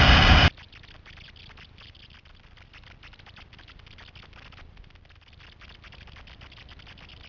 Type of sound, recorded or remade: recorded